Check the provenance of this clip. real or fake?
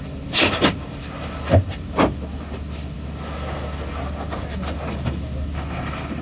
real